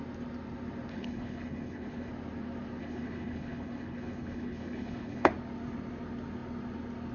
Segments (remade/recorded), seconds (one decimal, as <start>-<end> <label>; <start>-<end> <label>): 0.0-0.9 recorded; 0.9-2.1 remade; 2.1-2.8 recorded; 2.8-5.3 remade; 5.3-7.1 recorded